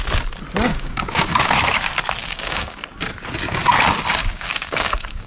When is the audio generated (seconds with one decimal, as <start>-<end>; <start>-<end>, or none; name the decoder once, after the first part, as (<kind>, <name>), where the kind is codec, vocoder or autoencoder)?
0.7-1.5 (codec, DAC); 2.2-2.8; 4.2-5.3